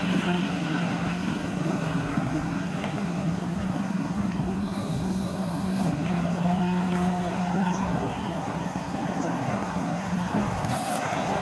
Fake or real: fake